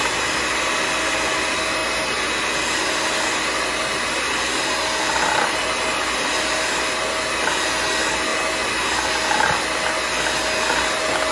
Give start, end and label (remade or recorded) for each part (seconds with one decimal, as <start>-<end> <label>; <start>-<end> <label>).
0.0-11.3 recorded